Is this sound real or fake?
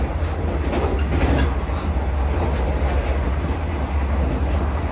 real